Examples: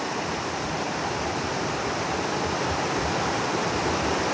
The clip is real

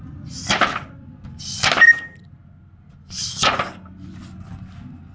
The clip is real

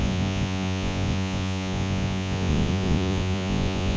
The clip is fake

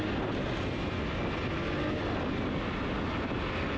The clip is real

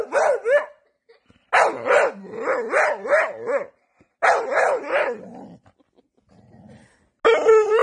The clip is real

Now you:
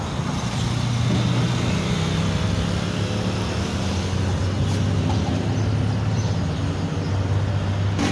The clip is real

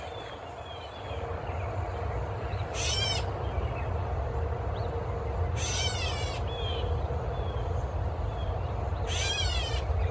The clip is real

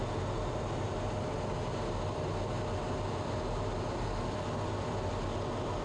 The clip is real